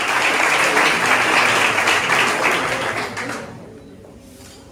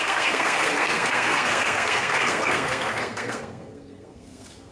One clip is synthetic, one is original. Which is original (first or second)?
first